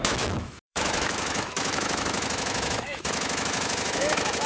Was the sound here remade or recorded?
remade